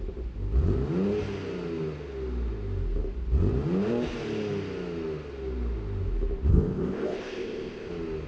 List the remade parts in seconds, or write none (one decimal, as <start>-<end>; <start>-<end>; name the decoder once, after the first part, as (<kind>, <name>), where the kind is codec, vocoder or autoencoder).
6.5-7.9 (codec, ZipCodec)